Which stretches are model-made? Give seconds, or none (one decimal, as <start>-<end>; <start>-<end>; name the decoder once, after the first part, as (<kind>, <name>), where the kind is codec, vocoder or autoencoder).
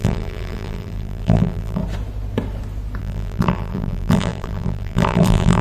0.0-1.8 (vocoder, BigVGAN v2); 3.0-5.6